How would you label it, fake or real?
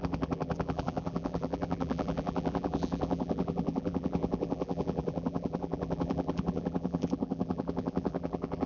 fake